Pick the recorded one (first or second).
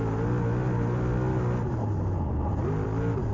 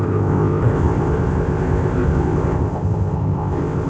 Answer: first